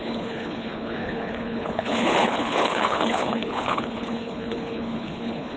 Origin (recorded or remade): remade